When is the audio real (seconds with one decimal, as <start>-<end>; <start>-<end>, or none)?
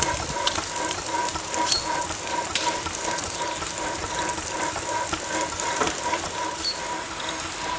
0.0-7.8